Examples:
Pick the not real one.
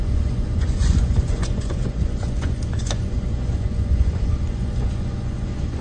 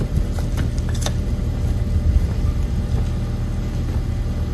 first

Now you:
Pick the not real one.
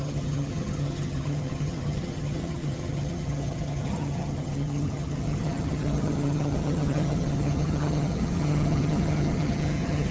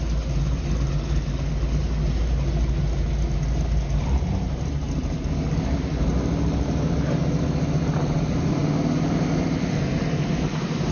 first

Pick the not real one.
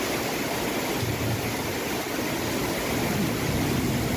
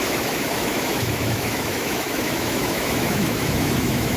second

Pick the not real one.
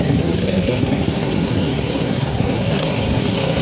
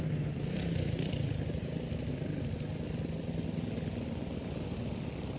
first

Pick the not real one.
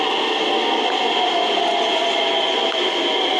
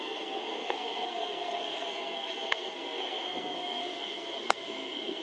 second